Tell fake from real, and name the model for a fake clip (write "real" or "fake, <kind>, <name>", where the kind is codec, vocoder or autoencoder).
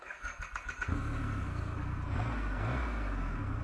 fake, codec, SNAC